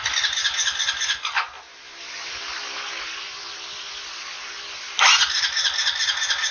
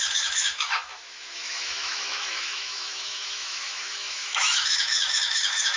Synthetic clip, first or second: second